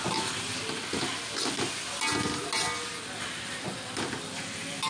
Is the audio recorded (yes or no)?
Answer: yes